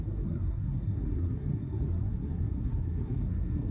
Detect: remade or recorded remade